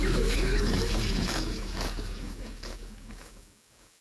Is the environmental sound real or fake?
fake